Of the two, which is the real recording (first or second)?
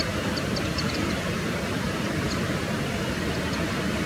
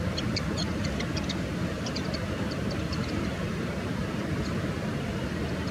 first